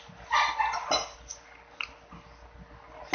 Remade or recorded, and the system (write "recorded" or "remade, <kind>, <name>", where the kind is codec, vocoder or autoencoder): recorded